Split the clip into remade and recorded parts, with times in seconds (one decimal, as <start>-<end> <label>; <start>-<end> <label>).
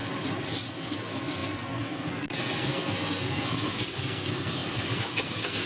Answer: 0.0-0.7 recorded; 0.7-5.7 remade